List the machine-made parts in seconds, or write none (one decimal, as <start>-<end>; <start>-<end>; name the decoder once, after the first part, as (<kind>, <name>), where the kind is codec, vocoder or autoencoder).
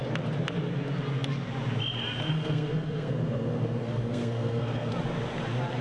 2.3-4.9 (codec, SNAC)